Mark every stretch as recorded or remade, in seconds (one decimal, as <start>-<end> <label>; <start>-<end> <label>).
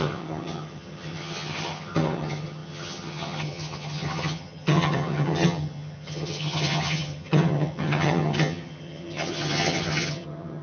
0.0-10.6 remade